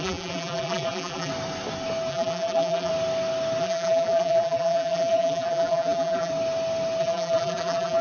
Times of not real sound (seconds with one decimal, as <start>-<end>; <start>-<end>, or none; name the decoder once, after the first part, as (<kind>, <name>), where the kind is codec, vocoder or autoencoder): 0.0-1.3 (vocoder, BigVGAN v2); 2.1-2.9; 3.6-6.3; 7.0-8.0